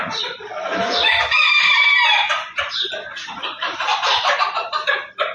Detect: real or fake fake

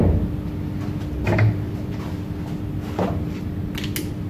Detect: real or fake real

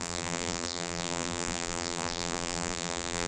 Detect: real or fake fake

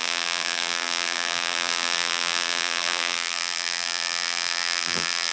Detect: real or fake fake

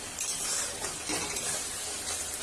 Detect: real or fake real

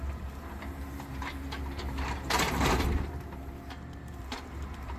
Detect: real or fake fake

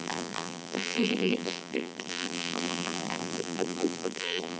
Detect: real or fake fake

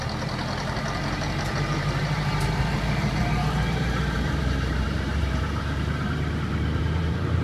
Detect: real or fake fake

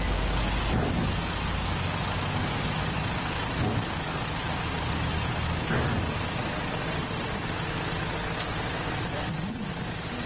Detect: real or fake real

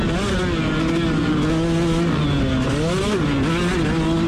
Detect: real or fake real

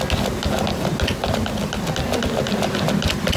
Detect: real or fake real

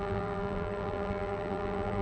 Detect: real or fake fake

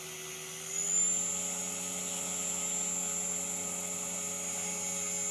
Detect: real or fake real